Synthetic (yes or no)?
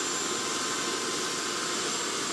no